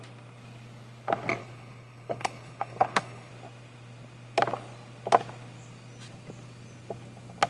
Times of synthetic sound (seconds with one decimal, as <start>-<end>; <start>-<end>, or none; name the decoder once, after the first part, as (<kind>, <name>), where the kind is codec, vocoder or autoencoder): 1.4-3.3 (codec, HILCodec)